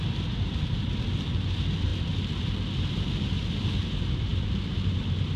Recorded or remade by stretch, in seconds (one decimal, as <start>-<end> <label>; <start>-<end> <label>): 0.0-5.4 recorded